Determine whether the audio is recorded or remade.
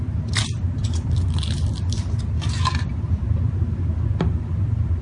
remade